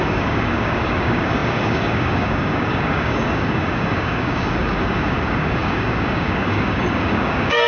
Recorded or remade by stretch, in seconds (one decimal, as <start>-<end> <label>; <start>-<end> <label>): 0.0-7.7 remade